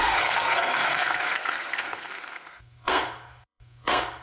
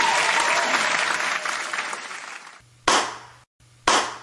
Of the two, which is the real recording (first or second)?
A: second